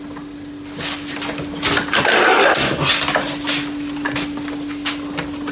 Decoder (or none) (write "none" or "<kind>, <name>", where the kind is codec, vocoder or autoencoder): none